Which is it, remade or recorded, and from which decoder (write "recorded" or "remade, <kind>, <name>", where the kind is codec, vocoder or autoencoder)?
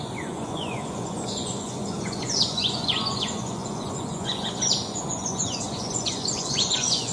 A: remade, vocoder, Vocos